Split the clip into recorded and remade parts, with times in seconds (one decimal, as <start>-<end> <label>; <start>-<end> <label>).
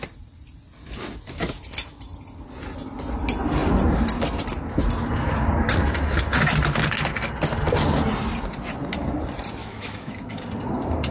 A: 0.0-9.6 recorded; 9.6-10.4 remade; 10.4-11.1 recorded